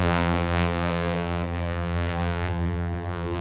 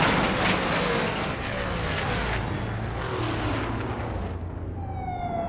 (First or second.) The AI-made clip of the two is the first